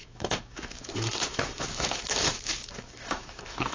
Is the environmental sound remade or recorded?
remade